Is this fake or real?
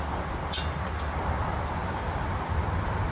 real